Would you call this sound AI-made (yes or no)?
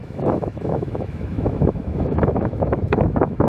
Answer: yes